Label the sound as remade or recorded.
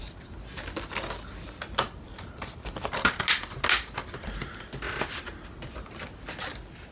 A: recorded